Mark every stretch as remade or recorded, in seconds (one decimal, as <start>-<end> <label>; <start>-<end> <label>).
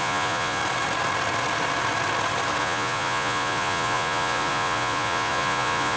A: 0.0-0.6 remade; 0.6-2.6 recorded; 2.6-6.0 remade